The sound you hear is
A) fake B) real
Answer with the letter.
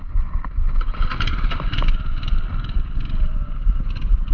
B